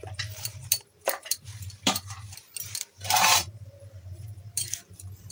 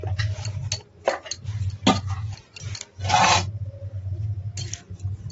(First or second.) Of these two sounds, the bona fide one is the second